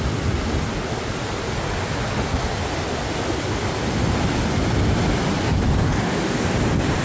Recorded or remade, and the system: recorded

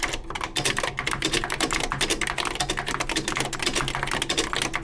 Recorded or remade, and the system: recorded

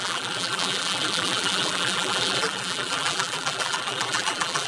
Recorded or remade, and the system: remade, vocoder, BigVGAN v2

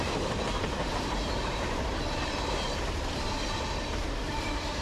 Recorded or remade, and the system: remade, vocoder, BigVGAN v2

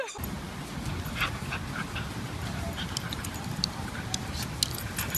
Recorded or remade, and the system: recorded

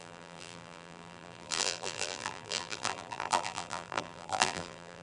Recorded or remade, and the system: remade, vocoder, BigVGAN v2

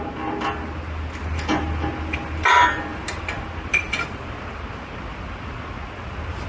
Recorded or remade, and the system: recorded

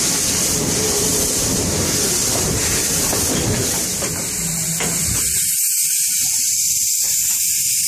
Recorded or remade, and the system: remade, vocoder, BigVGAN v2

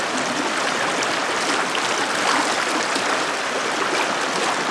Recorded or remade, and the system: recorded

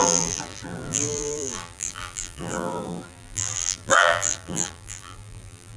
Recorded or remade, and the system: remade, vocoder, BigVGAN v2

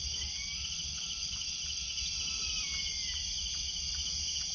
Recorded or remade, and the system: recorded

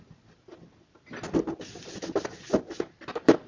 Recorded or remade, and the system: recorded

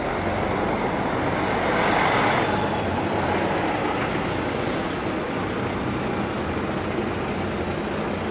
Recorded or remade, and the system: recorded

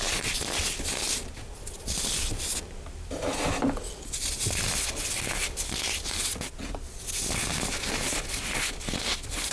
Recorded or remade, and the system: recorded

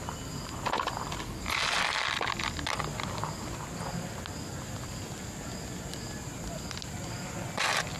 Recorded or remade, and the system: recorded